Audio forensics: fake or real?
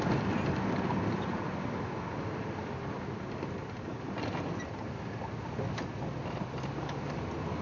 real